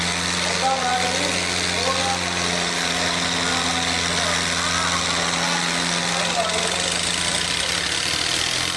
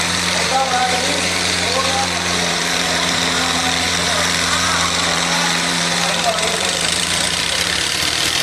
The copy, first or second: second